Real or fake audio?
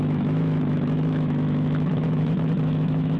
fake